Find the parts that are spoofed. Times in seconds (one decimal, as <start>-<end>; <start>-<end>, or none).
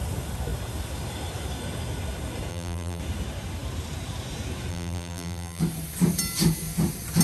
2.5-3.0; 4.7-5.6